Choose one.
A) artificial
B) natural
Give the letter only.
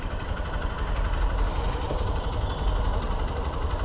A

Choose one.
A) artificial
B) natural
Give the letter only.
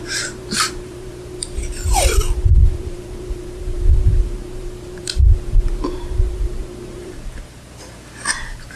A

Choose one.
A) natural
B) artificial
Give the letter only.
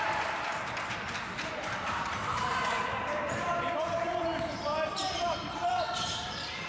B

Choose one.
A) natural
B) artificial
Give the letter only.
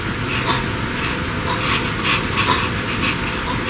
A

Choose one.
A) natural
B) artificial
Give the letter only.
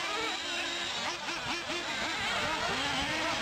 A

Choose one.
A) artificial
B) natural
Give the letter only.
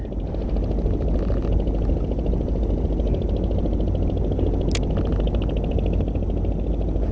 B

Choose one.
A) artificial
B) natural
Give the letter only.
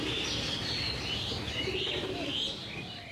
B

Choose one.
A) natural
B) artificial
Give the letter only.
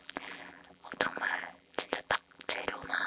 B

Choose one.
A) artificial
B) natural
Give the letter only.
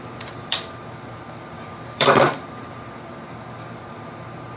A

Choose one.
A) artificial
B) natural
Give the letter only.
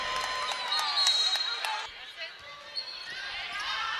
B